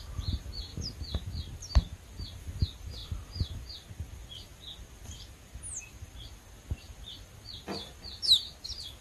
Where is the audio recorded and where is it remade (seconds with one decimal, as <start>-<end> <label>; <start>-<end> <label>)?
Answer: 0.0-9.0 recorded